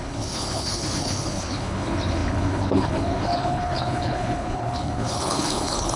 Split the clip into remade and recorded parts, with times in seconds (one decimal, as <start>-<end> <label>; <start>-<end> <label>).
0.0-6.0 remade

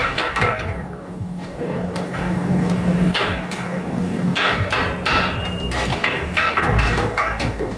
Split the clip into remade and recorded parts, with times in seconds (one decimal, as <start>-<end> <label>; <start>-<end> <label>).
0.0-4.7 remade; 4.7-5.9 recorded; 5.9-7.8 remade